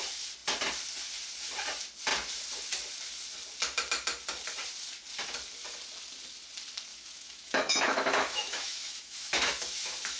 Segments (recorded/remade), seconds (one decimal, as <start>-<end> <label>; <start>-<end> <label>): 0.0-6.9 recorded; 6.9-10.2 remade

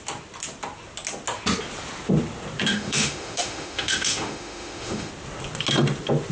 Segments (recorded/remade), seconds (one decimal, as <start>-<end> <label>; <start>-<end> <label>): 0.0-2.7 recorded; 2.7-5.1 remade; 5.1-6.3 recorded

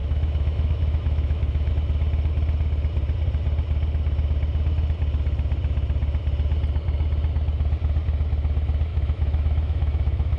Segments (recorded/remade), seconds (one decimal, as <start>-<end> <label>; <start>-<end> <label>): 0.0-1.7 remade; 1.7-8.9 recorded; 8.9-10.4 remade

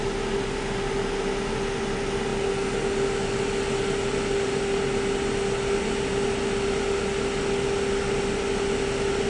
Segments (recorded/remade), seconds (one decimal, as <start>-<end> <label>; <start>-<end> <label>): 0.0-9.3 recorded